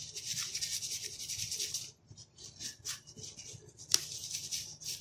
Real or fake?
real